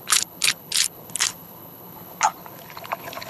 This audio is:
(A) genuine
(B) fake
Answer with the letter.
B